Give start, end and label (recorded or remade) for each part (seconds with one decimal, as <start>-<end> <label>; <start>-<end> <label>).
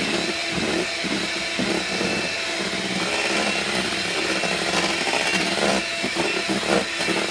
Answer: 0.0-0.4 recorded; 0.4-1.4 remade; 1.4-7.3 recorded